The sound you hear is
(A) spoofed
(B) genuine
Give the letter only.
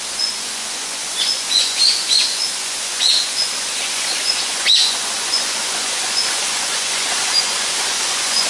A